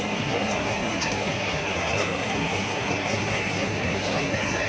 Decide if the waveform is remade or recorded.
remade